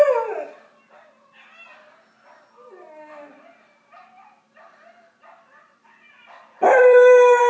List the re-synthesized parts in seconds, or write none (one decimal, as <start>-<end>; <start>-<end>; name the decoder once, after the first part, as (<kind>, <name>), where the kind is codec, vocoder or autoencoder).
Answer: 4.2-7.5 (vocoder, BigVGAN v2)